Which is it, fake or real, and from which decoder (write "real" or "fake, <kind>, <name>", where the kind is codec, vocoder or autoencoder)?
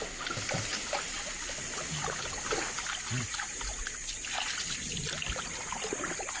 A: real